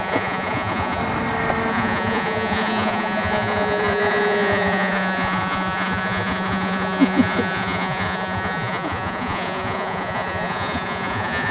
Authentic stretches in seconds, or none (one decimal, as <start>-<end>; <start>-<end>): 1.0-1.7